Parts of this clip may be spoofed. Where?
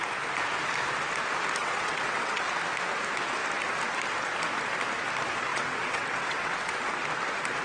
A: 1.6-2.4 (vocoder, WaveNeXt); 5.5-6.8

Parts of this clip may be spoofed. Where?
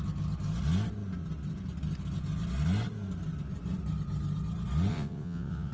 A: 4.9-5.7 (vocoder, WaveNeXt)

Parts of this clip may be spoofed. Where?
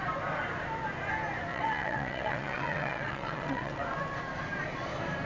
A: 1.5-3.8 (vocoder, WaveNeXt)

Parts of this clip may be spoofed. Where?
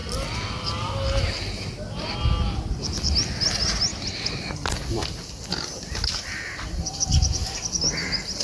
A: none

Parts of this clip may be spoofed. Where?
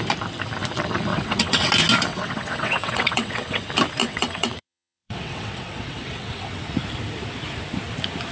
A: 1.1-1.7 (vocoder, WaveNeXt); 2.1-3.6; 4.0-6.5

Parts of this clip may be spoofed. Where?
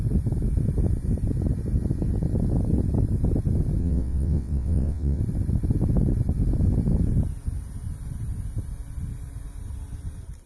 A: 3.8-5.2 (vocoder, WaveNeXt)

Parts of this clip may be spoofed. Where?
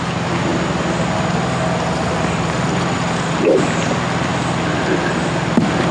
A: none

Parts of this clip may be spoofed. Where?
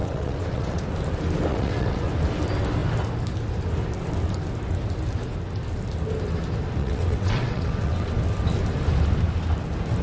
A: 0.0-0.8 (vocoder, WaveNeXt); 1.5-2.1; 6.8-8.1